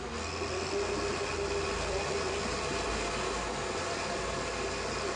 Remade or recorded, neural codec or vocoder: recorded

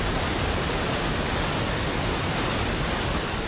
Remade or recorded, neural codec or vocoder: recorded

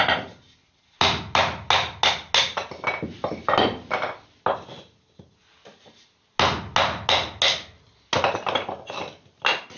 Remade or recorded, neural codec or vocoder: recorded